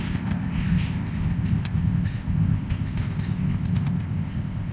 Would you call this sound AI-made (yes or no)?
yes